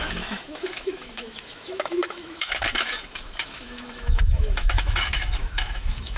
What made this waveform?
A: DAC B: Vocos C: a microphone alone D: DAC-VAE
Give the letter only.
D